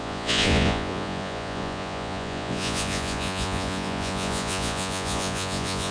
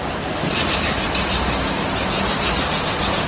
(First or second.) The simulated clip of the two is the first